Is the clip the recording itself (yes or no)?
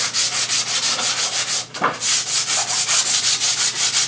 yes